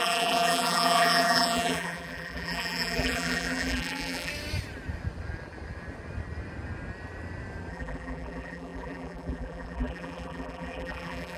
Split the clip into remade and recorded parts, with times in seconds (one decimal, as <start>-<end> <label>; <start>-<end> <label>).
0.0-4.3 remade; 4.3-7.7 recorded; 7.7-11.4 remade